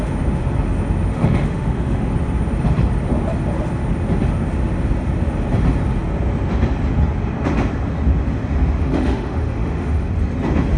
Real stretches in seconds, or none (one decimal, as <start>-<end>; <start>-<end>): 0.0-1.1; 2.1-8.8; 10.1-10.8